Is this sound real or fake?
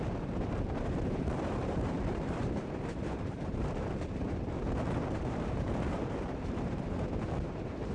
fake